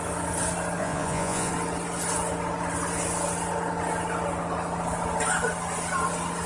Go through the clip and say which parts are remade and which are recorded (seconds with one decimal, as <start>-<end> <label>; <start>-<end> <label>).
0.0-0.8 recorded; 0.8-1.5 remade; 1.5-6.5 recorded